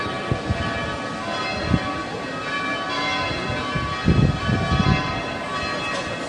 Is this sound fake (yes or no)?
no